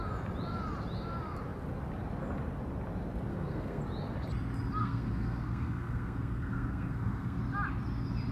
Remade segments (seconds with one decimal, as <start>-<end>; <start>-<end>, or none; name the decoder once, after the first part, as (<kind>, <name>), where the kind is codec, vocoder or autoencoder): 3.3-3.8 (codec, SNAC); 4.8-7.4